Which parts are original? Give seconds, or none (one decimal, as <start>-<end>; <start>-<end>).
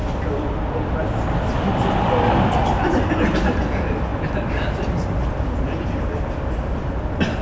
0.0-7.4